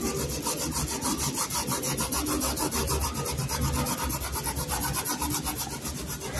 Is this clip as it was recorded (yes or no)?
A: yes